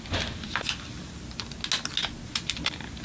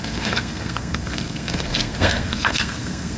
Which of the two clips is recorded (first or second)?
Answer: first